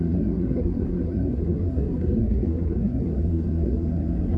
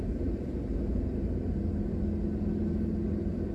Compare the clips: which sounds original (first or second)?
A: second